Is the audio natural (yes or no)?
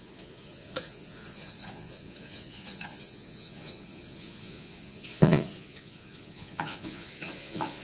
no